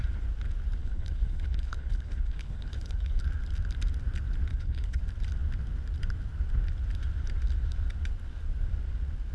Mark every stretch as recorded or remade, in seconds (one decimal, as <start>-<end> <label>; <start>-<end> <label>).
0.0-0.8 recorded; 0.8-3.2 remade; 3.2-4.5 recorded; 4.5-5.0 remade; 5.0-9.3 recorded